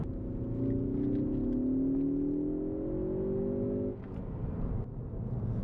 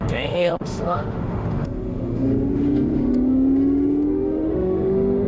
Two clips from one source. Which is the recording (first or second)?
first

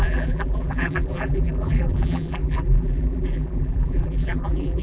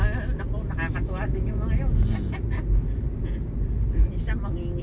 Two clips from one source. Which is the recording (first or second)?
second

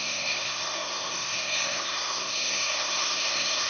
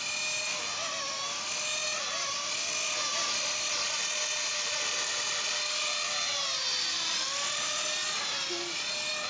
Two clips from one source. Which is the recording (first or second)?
second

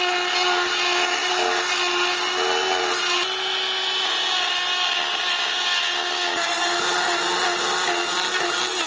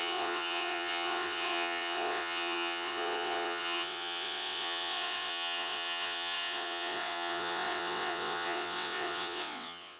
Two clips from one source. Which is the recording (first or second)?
first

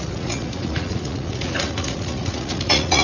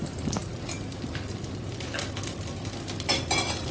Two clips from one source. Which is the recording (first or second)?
second